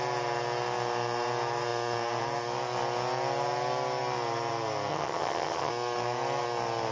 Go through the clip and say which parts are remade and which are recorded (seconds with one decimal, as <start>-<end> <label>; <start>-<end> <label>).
0.0-4.9 recorded; 4.9-5.7 remade; 5.7-6.9 recorded